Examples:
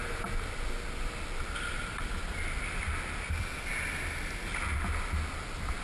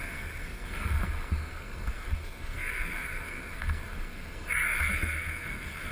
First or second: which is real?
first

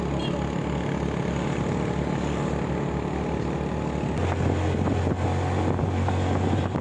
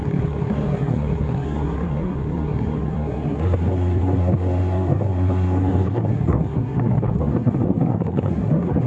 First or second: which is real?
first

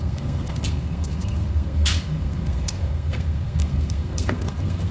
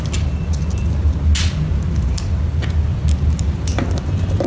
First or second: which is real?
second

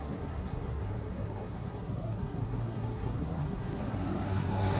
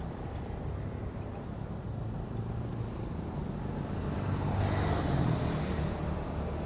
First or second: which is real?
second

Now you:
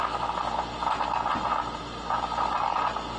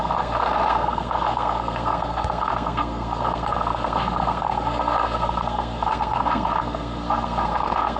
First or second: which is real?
first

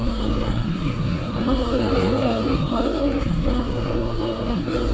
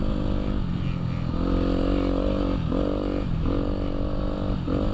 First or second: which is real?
second